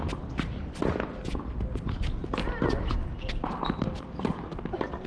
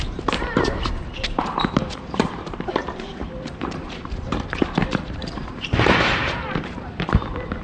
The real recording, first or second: first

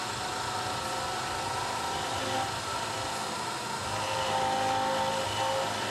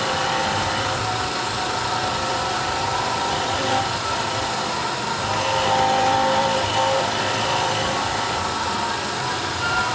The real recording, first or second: first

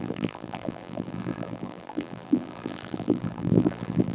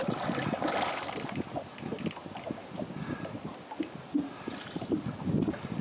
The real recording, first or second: second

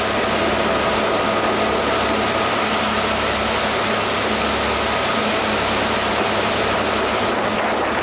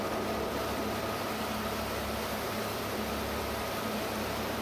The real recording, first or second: first